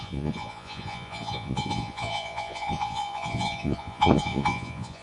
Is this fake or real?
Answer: fake